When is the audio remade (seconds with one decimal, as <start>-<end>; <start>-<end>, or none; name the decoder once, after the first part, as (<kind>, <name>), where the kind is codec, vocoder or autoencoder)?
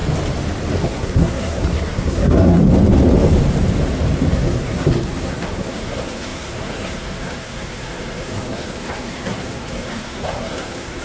0.8-2.6 (codec, SNAC); 4.3-11.0